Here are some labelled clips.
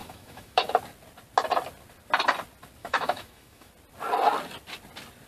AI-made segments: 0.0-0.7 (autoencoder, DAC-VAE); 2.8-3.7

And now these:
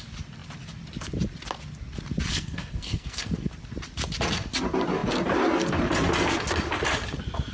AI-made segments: 2.3-3.5 (codec, SNAC)

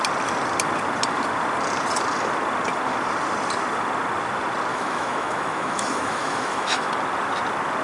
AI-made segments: 4.7-6.9 (autoencoder, DAC-VAE)

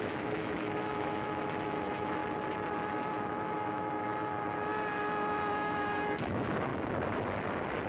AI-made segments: 0.0-2.2 (autoencoder, DAC-VAE); 3.3-4.1; 5.5-6.7